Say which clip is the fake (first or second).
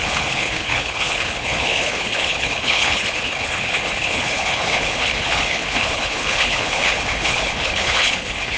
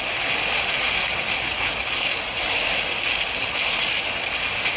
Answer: first